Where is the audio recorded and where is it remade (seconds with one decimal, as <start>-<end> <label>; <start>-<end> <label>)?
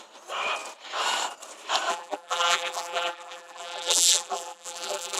0.0-1.9 recorded; 1.9-5.2 remade